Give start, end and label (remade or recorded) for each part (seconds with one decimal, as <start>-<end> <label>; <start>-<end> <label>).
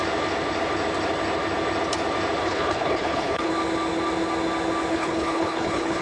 0.0-2.4 recorded; 2.4-3.5 remade; 3.5-4.9 recorded; 4.9-6.0 remade